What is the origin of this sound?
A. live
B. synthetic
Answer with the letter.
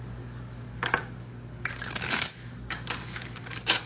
B